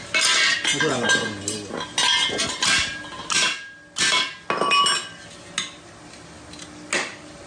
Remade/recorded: recorded